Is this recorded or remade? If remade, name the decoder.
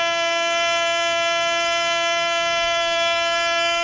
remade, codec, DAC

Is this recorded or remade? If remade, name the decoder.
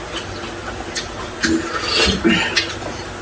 recorded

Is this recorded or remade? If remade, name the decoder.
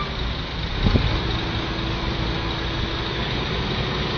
recorded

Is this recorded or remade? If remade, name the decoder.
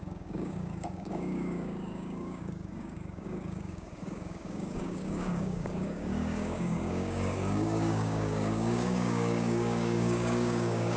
remade, codec, DAC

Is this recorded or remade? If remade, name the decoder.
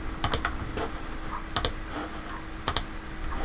recorded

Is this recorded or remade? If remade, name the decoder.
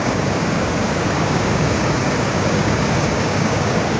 remade, codec, DAC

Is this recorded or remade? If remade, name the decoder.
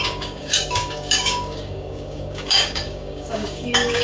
remade, codec, DAC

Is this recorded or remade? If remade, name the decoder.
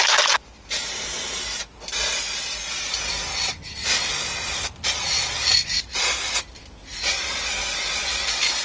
recorded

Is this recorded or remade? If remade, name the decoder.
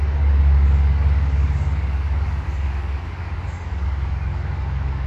remade, codec, DAC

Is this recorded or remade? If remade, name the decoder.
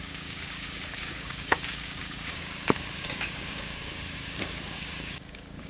remade, codec, DAC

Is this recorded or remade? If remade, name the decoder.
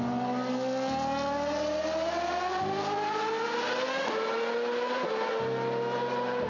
recorded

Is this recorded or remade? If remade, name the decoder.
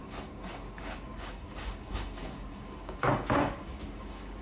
remade, codec, DAC